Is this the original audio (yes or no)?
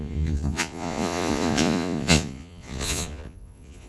no